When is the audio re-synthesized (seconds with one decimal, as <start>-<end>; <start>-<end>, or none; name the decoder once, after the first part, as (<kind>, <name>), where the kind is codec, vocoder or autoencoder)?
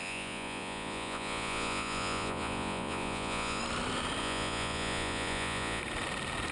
0.0-3.6 (vocoder, Vocos); 4.2-5.8